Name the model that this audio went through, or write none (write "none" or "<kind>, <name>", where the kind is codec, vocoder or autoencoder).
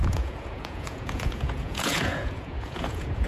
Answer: vocoder, Vocos